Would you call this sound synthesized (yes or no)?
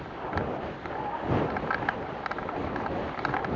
no